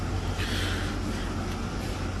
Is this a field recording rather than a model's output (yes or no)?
yes